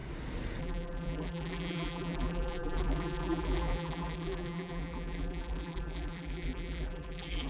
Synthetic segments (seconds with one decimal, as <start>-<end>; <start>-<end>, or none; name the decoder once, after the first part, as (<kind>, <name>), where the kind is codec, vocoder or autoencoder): 0.6-7.5 (vocoder, BigVGAN v2)